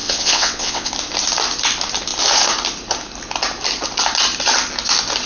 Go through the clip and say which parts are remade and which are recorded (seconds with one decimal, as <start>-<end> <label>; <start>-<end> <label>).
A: 0.0-0.9 remade; 0.9-5.3 recorded